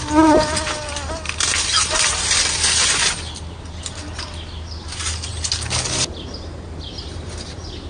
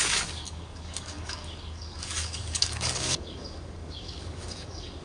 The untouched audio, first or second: first